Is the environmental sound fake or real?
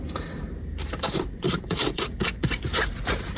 fake